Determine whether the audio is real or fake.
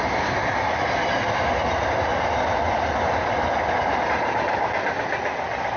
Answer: real